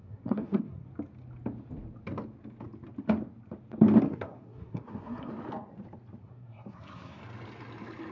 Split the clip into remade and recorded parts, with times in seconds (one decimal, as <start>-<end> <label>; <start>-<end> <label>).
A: 0.0-0.9 remade; 0.9-4.0 recorded; 4.0-5.3 remade; 5.3-6.2 recorded; 6.2-7.2 remade; 7.2-8.1 recorded